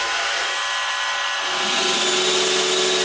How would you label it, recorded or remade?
recorded